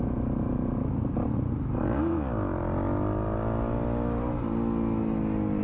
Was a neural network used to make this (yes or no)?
no